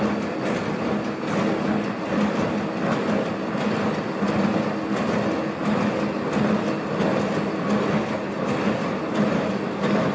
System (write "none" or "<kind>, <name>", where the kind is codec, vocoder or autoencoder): none